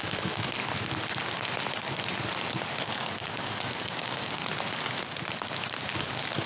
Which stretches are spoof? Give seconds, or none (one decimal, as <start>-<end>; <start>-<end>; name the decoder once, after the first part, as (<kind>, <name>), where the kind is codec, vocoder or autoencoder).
0.0-0.6 (codec, DAC); 2.8-4.4; 6.0-6.5